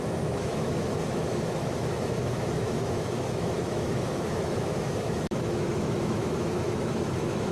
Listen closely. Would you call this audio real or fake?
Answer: fake